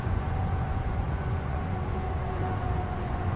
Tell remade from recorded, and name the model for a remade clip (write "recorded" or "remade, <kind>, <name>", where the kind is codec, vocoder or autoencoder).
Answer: remade, vocoder, Vocos